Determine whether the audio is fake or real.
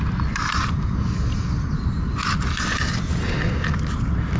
real